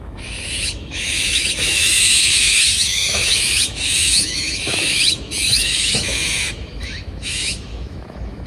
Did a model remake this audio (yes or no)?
yes